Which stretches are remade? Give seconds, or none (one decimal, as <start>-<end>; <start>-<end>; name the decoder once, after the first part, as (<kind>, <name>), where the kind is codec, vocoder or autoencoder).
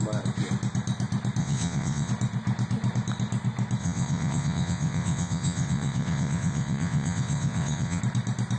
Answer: 1.4-2.1 (vocoder, WaveNeXt); 3.8-8.0